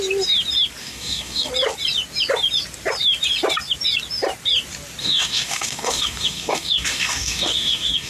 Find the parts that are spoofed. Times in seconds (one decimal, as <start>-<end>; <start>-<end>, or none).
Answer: 0.8-1.5; 5.0-8.1